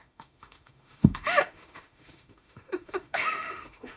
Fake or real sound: fake